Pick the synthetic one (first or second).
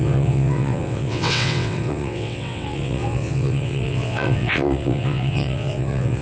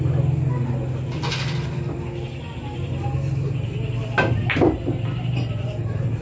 first